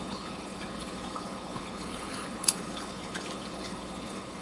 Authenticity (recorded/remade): remade